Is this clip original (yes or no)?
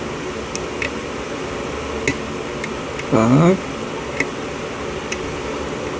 yes